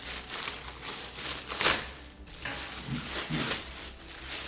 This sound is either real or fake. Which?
real